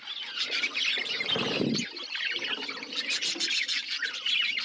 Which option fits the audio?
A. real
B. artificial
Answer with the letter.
A